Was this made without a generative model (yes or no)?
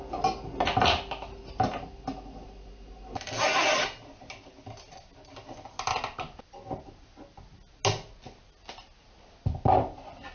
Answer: yes